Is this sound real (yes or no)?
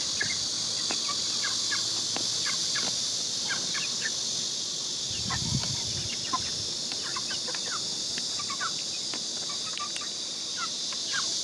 yes